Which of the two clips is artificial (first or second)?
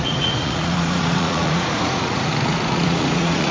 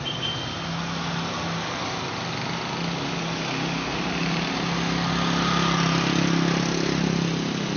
first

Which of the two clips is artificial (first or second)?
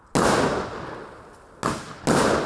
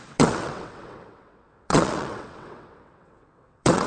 second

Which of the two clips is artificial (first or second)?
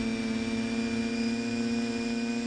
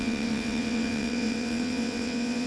second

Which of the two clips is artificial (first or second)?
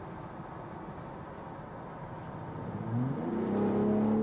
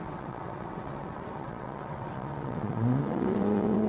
second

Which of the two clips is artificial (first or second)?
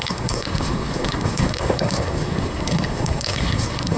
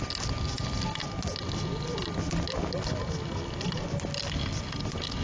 first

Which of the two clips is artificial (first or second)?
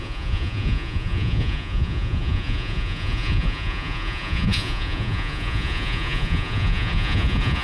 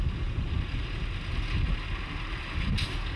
first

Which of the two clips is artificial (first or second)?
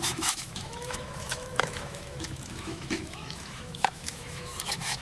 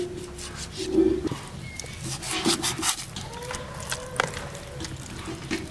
first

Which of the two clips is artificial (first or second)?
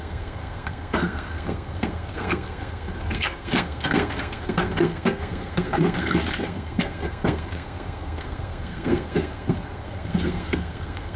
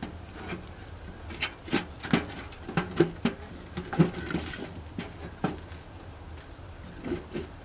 first